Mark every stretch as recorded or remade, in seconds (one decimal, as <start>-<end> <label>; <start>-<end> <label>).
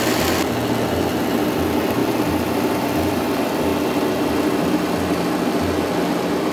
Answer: 0.0-2.0 recorded; 2.0-3.3 remade; 3.3-6.5 recorded